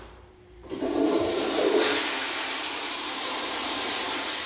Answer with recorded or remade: remade